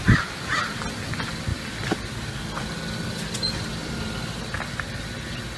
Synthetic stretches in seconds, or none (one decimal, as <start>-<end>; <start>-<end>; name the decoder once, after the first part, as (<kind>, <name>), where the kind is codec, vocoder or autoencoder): none